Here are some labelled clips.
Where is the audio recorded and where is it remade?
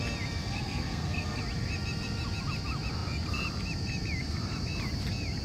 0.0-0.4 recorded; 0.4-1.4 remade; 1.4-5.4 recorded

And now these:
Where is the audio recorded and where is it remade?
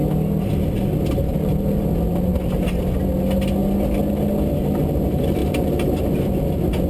0.0-6.9 recorded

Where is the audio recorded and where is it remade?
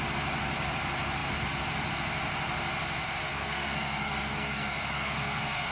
0.0-3.3 recorded; 3.3-5.7 remade